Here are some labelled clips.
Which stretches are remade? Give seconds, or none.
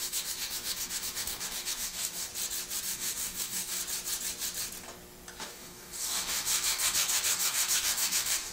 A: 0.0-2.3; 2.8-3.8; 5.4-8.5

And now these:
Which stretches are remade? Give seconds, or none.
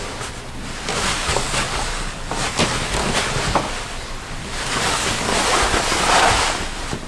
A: 1.1-2.3; 4.4-5.4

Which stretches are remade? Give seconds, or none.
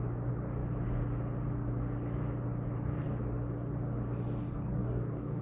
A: 4.4-5.4